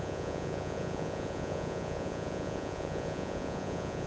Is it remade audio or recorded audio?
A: remade